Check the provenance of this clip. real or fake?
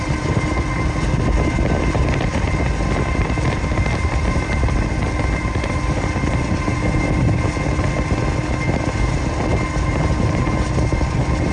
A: real